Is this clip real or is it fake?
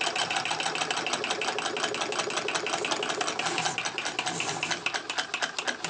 real